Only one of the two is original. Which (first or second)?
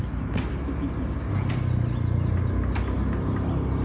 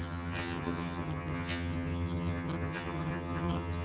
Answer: first